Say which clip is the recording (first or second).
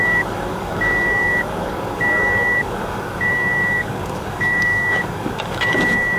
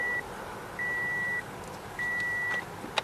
second